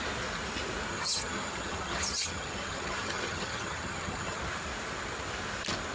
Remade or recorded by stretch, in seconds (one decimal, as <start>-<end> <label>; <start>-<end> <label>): 0.0-0.9 recorded; 0.9-4.4 remade; 4.4-5.9 recorded